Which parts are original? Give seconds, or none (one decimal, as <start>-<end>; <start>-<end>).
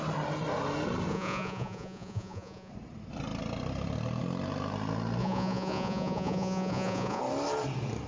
0.0-1.1; 2.7-5.2; 7.2-8.1